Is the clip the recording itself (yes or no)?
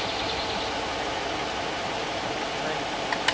yes